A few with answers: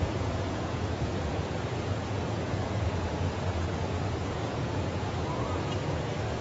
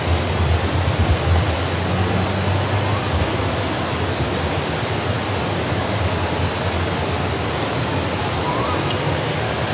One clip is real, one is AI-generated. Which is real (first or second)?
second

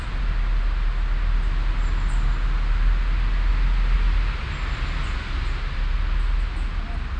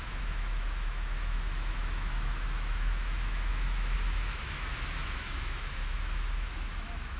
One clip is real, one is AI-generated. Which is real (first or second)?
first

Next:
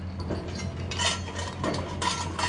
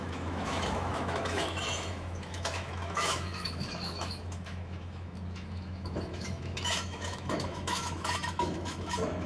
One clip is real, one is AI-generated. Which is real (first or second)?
first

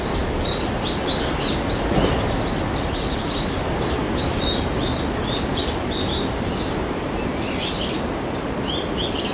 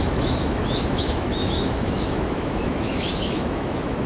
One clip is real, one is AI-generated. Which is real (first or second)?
first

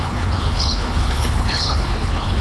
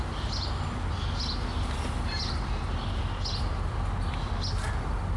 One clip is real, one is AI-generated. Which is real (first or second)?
second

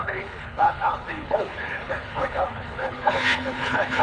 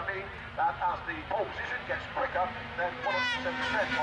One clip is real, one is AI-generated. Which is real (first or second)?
second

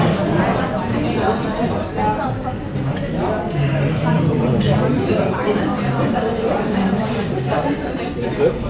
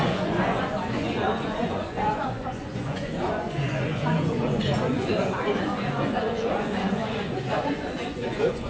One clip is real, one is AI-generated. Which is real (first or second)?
first